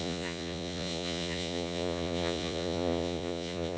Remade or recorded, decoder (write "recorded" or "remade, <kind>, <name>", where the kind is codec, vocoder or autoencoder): remade, vocoder, Vocos